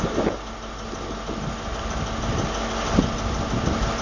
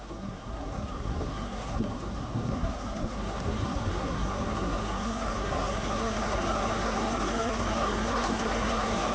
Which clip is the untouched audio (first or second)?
first